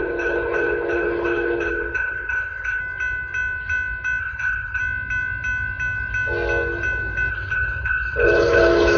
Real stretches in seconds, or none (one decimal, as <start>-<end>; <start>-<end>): 2.8-4.2; 4.8-7.3